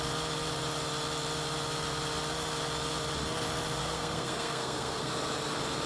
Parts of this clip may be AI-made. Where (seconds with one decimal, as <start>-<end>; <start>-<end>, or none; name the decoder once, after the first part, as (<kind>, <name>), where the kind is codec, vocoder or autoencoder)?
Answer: 3.8-5.1 (codec, SNAC)